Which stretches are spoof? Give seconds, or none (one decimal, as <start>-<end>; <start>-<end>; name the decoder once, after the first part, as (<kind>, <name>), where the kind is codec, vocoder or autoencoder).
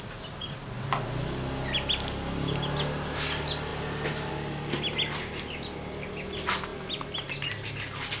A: none